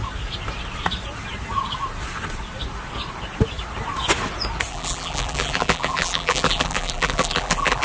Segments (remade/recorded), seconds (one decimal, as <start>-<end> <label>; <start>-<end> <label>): 0.0-4.7 recorded; 4.7-7.8 remade